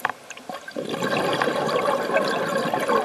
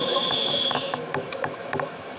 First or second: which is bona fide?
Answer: first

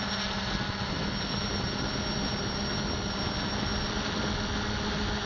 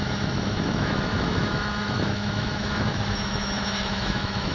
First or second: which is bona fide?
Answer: first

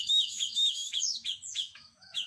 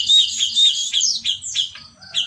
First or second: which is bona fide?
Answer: second